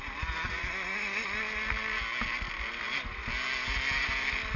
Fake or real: real